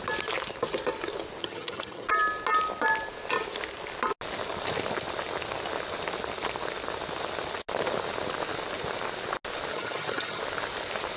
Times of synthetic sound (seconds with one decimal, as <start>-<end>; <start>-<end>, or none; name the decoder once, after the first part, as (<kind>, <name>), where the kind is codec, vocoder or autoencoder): 1.4-2.1 (vocoder, HiFi-GAN); 9.7-10.4